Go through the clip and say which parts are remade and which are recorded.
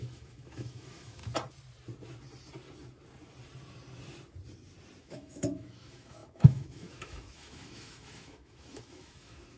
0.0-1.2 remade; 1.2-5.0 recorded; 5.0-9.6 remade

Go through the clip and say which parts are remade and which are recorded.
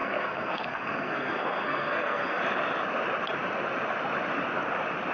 0.0-2.4 remade; 2.4-5.1 recorded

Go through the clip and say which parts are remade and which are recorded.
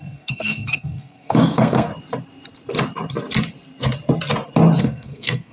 0.0-1.9 remade; 1.9-4.8 recorded; 4.8-5.5 remade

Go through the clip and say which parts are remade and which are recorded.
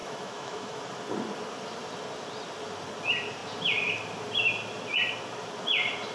0.0-0.8 remade; 0.8-6.1 recorded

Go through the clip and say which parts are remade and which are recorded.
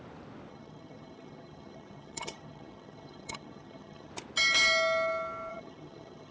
0.0-0.5 recorded; 0.5-4.1 remade; 4.1-5.5 recorded; 5.5-6.3 remade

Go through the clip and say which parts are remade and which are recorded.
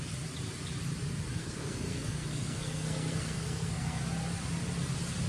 0.0-1.3 recorded; 1.3-4.0 remade; 4.0-5.3 recorded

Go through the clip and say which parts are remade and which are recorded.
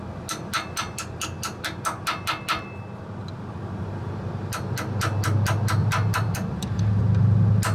0.0-5.8 recorded; 5.8-7.0 remade; 7.0-7.7 recorded